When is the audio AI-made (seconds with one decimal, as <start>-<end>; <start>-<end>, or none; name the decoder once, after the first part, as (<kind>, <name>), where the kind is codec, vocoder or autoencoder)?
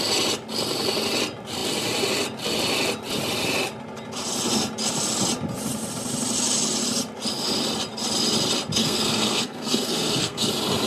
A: 8.8-10.5 (codec, SNAC)